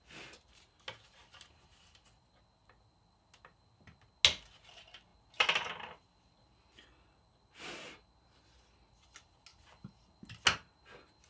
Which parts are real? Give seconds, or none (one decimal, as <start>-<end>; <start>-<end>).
0.0-11.3